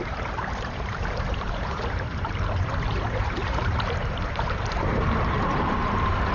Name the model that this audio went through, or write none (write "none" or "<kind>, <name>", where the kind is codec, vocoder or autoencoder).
vocoder, BigVGAN v2